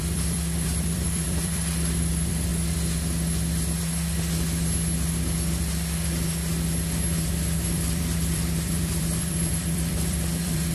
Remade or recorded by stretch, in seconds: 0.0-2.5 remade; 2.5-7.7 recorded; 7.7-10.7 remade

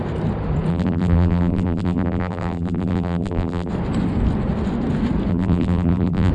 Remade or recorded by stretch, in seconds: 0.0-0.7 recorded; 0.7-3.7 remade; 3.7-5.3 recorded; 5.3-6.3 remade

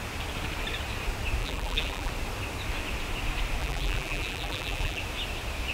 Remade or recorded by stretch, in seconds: 0.0-1.4 recorded; 1.4-2.1 remade; 2.1-3.6 recorded; 3.6-5.0 remade; 5.0-5.7 recorded